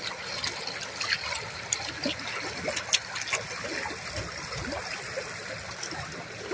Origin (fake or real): real